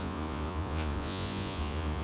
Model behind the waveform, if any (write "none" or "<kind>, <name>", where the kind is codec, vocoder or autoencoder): vocoder, Vocos